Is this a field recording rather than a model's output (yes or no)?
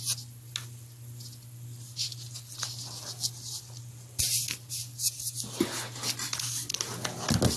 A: yes